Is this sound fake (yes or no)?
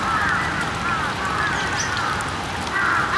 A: no